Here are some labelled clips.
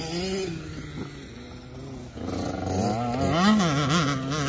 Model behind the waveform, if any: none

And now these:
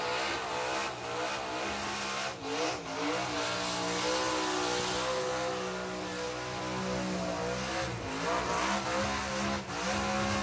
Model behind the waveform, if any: none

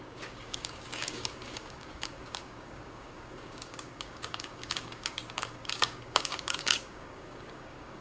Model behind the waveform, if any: codec, DAC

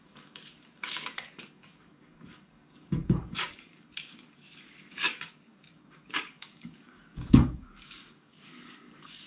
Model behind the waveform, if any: codec, DAC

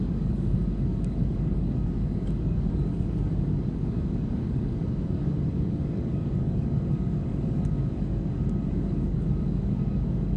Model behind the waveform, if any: codec, DAC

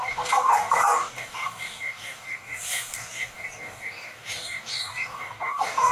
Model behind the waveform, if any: codec, DAC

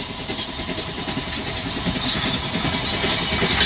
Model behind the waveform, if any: none